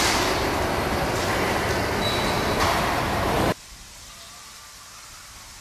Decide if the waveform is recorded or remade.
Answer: recorded